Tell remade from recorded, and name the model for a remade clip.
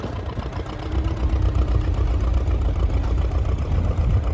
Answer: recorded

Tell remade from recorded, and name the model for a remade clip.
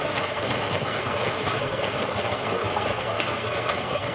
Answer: remade, codec, SNAC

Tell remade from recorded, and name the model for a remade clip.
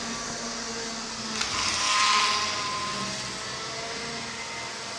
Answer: recorded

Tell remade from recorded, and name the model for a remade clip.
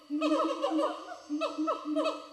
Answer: recorded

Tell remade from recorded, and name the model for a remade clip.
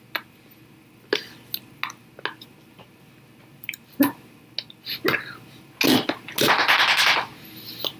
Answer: recorded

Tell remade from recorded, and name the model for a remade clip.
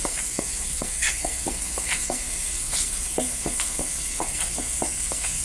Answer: remade, codec, SNAC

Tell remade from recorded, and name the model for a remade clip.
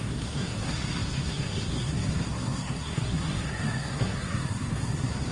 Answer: remade, codec, SNAC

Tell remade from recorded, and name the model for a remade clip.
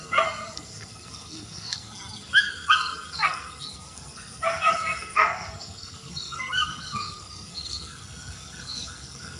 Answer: remade, codec, SNAC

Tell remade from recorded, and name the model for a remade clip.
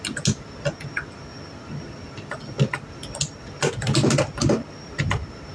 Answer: recorded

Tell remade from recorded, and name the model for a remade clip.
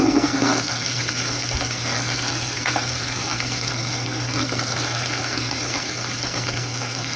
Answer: remade, codec, SNAC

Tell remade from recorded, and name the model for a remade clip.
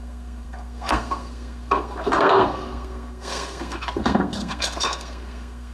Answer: remade, codec, SNAC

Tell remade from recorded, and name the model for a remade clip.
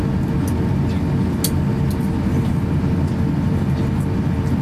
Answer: recorded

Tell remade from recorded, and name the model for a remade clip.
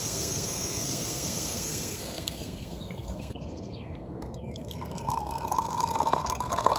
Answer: remade, codec, SNAC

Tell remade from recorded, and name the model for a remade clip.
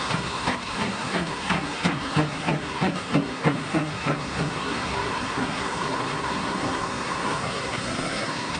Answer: remade, codec, SNAC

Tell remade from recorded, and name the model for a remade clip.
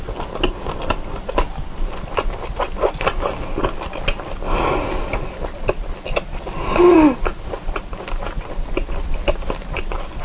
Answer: recorded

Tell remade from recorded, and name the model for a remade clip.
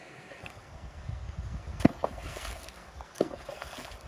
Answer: remade, codec, SNAC